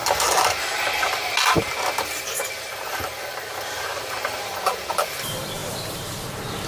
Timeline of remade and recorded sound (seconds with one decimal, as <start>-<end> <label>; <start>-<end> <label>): 0.0-6.7 remade